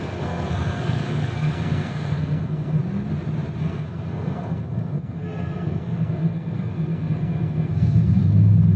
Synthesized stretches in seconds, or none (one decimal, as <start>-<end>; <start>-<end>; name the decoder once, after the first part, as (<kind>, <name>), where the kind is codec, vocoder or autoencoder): 0.0-2.8 (codec, SNAC); 3.6-8.8